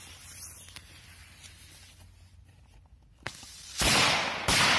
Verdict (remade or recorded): recorded